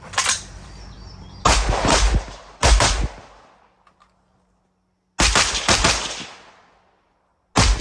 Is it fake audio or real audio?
real